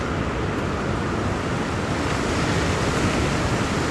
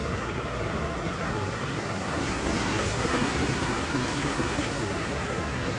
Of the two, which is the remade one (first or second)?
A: second